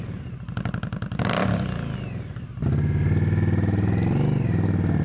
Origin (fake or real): real